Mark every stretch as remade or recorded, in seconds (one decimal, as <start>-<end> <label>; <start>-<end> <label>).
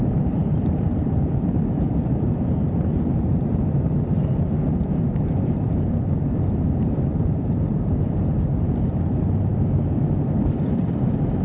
0.0-11.4 remade